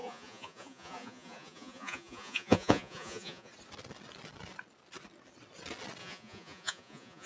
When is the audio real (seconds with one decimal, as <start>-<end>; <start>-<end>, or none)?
3.5-6.0